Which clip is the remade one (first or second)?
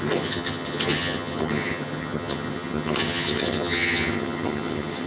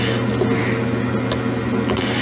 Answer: first